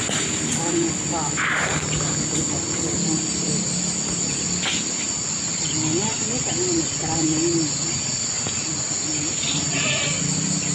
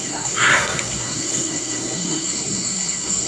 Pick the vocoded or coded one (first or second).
second